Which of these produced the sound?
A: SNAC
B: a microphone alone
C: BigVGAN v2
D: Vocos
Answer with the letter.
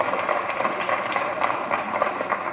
C